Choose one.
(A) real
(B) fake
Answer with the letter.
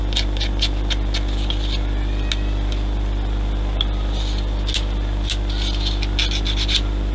A